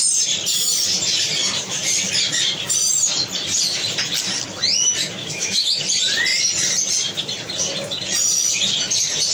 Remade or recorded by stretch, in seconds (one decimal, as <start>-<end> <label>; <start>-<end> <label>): 0.0-5.2 recorded; 5.2-5.8 remade; 5.8-9.3 recorded